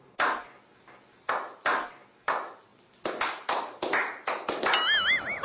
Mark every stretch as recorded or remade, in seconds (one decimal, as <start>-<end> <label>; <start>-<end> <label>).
0.0-5.4 recorded